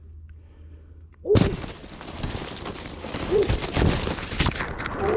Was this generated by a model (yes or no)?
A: no